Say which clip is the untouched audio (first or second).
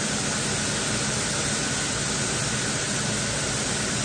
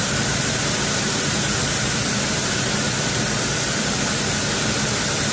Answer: first